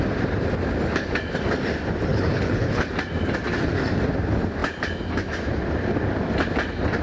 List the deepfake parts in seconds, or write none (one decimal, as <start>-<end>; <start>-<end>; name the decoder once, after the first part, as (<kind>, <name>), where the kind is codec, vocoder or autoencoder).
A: 2.1-2.9 (codec, HILCodec)